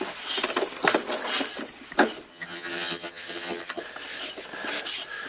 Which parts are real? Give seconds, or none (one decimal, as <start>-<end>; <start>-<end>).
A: 0.0-2.3; 3.8-5.3